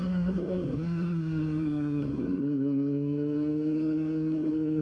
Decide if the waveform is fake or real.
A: fake